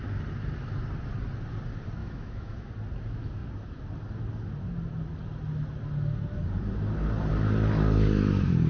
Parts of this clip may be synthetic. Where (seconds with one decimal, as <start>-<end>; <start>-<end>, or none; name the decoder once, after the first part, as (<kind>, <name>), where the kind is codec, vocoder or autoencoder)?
2.0-2.7 (autoencoder, DAC-VAE)